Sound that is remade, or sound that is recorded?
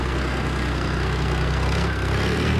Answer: remade